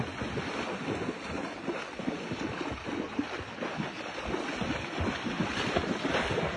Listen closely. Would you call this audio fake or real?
real